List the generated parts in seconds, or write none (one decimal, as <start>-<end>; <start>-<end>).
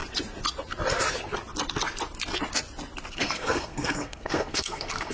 3.1-5.1